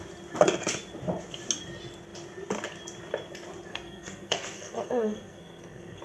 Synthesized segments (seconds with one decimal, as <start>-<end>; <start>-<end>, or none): 3.7-6.0